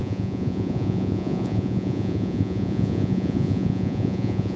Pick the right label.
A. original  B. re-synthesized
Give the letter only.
B